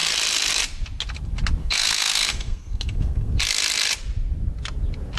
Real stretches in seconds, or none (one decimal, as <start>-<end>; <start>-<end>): 0.0-1.6; 3.3-5.2